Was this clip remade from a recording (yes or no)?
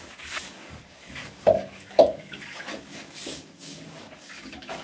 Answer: yes